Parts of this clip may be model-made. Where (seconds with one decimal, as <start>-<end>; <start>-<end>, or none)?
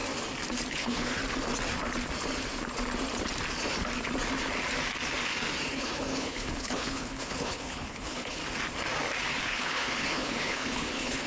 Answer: 0.7-1.2; 5.7-8.4; 9.4-11.3